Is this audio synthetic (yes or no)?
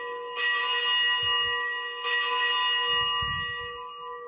no